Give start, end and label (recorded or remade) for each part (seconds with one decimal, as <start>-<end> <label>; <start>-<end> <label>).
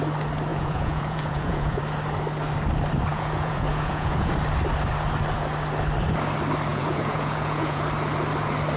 0.0-0.5 recorded; 0.5-1.8 remade; 1.8-3.1 recorded; 3.1-4.3 remade; 4.3-6.7 recorded; 6.7-7.8 remade; 7.8-8.8 recorded